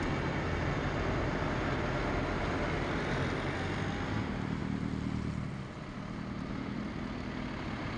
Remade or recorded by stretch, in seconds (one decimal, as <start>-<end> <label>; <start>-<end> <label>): 0.0-8.0 recorded